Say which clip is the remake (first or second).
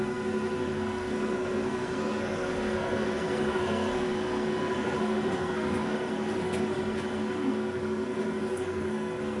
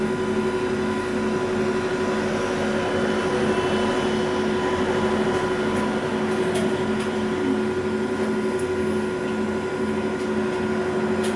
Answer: first